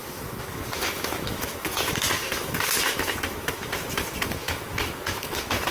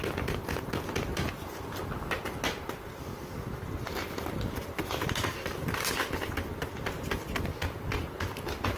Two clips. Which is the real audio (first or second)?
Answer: second